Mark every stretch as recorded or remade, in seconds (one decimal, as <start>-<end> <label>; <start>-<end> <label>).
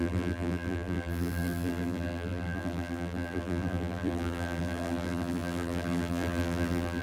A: 0.0-7.0 remade